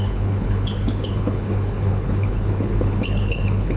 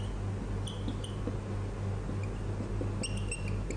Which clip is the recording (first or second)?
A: second